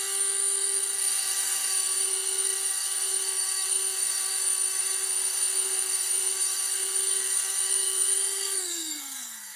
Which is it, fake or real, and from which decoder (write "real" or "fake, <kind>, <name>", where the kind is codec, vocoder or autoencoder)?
fake, codec, SNAC